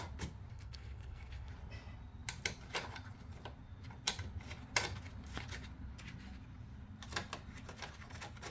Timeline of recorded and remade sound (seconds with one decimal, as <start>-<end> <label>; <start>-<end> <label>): 0.0-0.5 recorded; 0.5-1.5 remade; 1.5-8.5 recorded